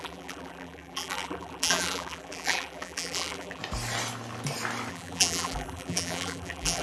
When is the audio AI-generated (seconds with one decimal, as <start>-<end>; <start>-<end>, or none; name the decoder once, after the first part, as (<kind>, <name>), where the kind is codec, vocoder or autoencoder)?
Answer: 0.0-3.6 (vocoder, BigVGAN v2); 4.9-6.8